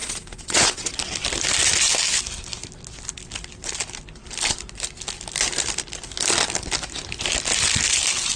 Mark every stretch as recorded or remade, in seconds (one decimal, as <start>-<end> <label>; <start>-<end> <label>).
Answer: 0.0-0.9 remade; 0.9-8.4 recorded